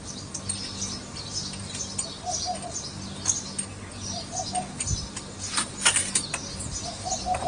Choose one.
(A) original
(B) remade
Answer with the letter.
A